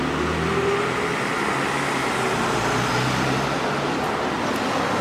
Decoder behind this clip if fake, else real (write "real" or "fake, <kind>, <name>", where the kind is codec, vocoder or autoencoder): real